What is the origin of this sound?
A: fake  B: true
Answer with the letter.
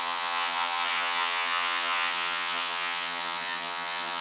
A